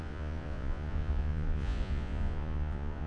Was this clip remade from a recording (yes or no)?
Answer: yes